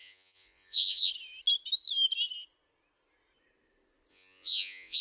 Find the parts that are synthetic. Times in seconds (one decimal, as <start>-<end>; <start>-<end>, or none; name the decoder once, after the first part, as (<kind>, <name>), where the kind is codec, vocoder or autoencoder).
0.0-1.1 (vocoder, Vocos); 4.1-5.0